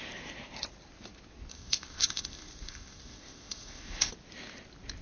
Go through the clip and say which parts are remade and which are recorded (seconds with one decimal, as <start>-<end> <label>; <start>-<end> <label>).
0.0-1.5 recorded; 1.5-4.1 remade; 4.1-5.0 recorded